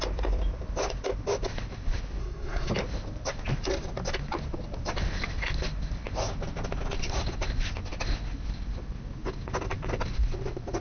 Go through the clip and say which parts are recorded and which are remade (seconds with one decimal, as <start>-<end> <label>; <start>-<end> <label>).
0.0-2.2 recorded; 2.2-2.7 remade; 2.7-10.8 recorded

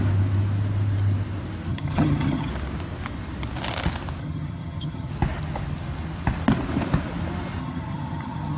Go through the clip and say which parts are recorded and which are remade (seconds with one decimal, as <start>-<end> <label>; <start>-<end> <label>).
0.0-1.7 recorded; 1.7-2.5 remade; 2.5-4.2 recorded; 4.2-5.1 remade; 5.1-7.6 recorded; 7.6-8.6 remade

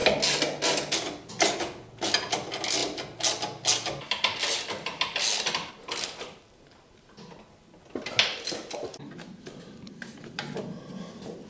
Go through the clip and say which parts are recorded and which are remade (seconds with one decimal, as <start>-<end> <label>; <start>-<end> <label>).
0.0-8.3 recorded; 8.3-10.6 remade; 10.6-11.5 recorded